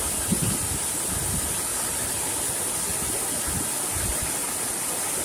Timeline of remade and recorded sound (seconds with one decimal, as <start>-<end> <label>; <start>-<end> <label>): 0.0-5.2 recorded